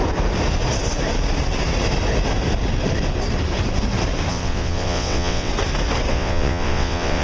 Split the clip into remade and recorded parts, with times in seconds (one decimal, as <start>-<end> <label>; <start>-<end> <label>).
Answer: 0.0-4.3 recorded; 4.3-5.5 remade; 5.5-6.1 recorded; 6.1-7.2 remade